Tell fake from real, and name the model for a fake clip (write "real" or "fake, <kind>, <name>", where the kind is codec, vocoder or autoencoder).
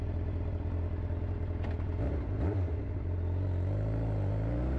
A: real